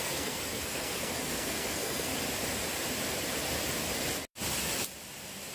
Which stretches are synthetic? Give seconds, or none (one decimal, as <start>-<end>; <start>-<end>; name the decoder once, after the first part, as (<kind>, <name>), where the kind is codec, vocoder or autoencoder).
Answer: 0.0-2.1 (codec, SNAC)